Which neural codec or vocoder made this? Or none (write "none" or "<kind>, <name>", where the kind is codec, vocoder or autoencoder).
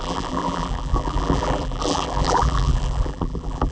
vocoder, BigVGAN v2